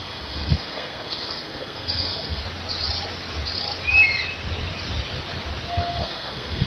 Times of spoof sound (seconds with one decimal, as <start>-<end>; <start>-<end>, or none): 0.0-2.4; 5.7-6.7